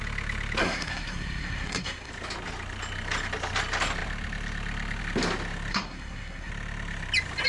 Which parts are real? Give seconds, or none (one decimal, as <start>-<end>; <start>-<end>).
0.0-0.6; 2.1-5.7; 6.5-7.5